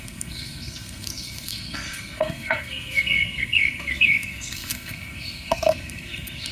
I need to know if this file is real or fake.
fake